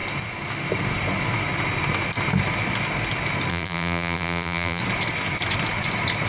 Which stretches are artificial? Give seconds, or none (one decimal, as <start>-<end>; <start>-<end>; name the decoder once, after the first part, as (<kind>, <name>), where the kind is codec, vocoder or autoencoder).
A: 3.5-4.8 (vocoder, BigVGAN v2)